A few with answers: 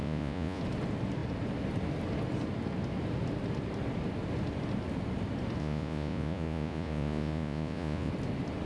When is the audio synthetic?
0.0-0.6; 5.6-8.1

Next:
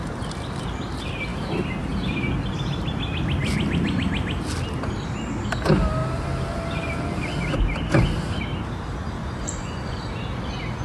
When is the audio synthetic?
9.2-10.0

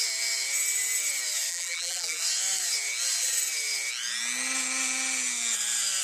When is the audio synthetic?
1.5-2.2

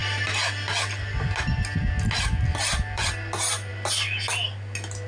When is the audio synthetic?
none